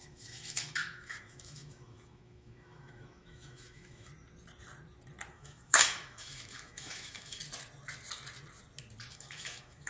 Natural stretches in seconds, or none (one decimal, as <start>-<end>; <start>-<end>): 4.1-5.3; 7.4-9.1